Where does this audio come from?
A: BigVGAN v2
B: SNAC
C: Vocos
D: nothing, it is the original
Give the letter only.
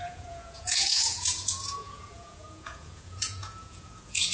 C